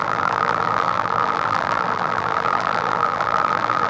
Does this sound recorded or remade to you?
remade